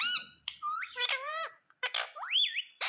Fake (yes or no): yes